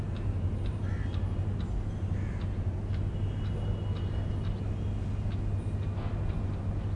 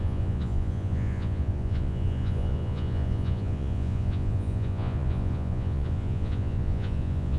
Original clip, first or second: first